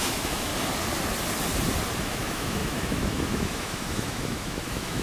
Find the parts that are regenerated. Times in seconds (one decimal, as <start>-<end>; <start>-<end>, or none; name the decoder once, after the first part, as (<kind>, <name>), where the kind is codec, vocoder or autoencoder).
0.0-0.5 (autoencoder, DAC-VAE); 2.0-5.0